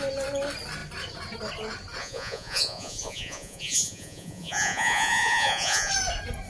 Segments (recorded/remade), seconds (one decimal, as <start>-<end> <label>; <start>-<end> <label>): 0.0-2.0 recorded; 2.0-5.9 remade; 5.9-6.5 recorded